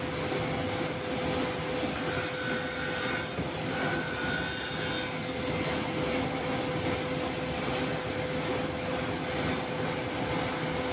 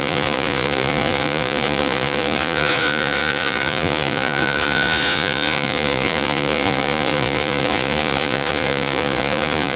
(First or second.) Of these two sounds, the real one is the first